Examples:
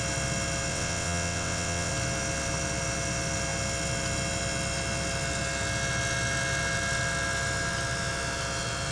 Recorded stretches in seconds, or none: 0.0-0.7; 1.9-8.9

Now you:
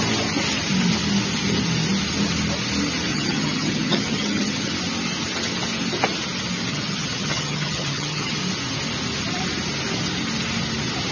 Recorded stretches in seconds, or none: 0.0-3.1; 4.7-6.7; 8.4-11.1

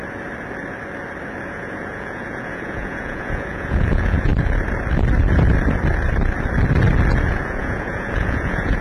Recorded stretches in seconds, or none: 0.0-1.5; 4.3-7.2

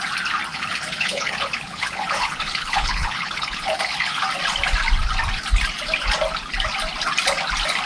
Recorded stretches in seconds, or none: 0.0-0.5; 4.2-7.9

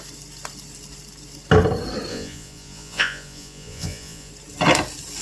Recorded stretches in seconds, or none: 0.0-2.1; 4.3-5.2

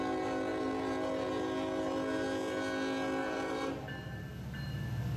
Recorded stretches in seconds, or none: 0.0-3.2; 4.2-5.2